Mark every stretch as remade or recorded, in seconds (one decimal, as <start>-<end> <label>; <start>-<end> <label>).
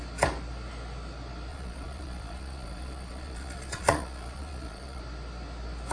0.0-1.5 recorded; 1.5-5.0 remade; 5.0-5.9 recorded